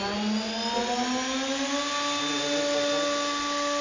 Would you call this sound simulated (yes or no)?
no